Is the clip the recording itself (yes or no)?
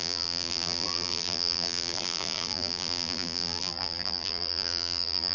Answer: no